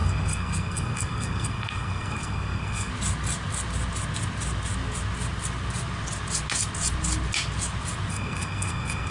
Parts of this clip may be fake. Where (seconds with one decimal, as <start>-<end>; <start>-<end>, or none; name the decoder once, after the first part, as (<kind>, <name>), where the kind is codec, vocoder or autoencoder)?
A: 0.0-2.9 (codec, SNAC); 8.1-9.1